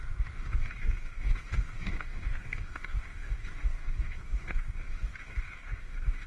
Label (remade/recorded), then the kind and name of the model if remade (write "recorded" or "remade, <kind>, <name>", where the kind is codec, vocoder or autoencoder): remade, codec, DAC